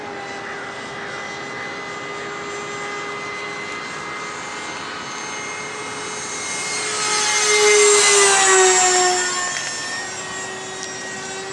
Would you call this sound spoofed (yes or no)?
no